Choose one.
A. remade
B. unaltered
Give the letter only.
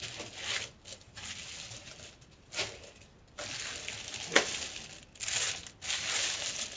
B